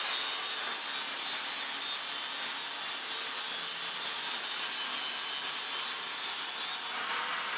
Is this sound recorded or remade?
recorded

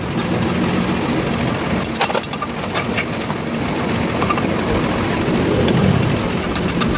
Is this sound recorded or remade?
recorded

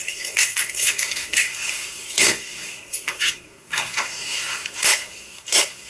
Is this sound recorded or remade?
remade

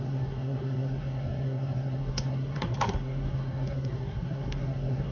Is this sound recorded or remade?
remade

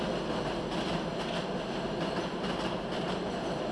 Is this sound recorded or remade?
recorded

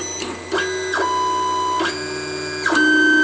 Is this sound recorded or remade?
recorded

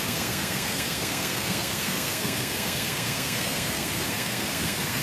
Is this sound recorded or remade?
remade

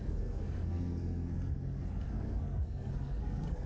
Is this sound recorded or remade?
remade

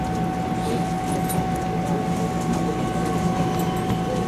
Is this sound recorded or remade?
recorded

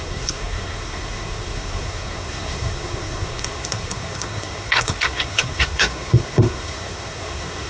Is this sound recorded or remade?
remade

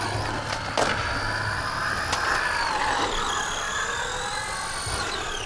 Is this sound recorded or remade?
recorded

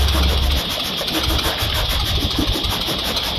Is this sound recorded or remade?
recorded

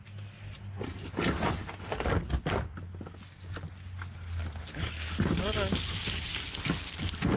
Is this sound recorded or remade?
recorded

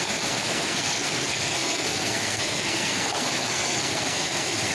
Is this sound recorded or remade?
remade